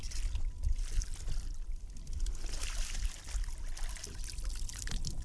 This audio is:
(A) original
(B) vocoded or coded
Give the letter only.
A